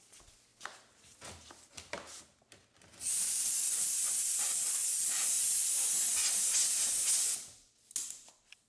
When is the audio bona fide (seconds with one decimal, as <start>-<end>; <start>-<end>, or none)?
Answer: 0.0-0.5; 5.2-8.7